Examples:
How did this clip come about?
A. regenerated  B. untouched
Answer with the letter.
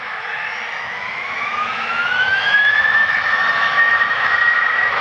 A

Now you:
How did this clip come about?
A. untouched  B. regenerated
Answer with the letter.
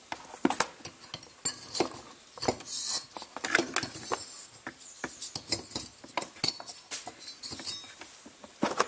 A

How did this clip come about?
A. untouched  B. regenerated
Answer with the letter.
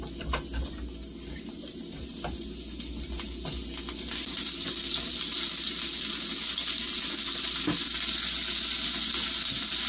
A